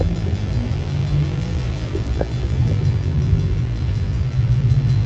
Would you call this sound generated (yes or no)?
yes